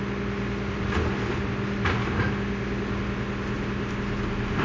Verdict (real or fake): real